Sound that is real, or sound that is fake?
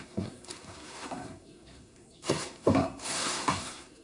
fake